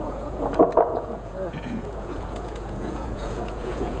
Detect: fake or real fake